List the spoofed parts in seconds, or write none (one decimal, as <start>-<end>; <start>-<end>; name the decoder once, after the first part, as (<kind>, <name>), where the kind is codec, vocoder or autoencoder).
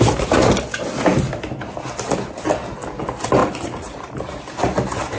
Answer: 3.4-4.5 (vocoder, BigVGAN v2)